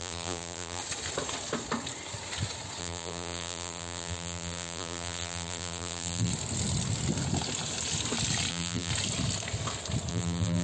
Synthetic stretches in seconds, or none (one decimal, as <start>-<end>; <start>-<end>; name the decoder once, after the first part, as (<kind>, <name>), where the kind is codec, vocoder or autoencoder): 0.0-0.8 (vocoder, BigVGAN v2); 2.8-6.3; 8.5-8.9; 10.1-10.6